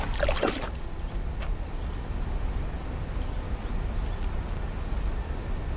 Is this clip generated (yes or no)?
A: no